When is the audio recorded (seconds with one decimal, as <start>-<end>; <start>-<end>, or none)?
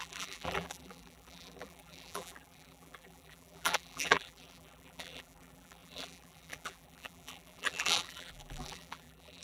none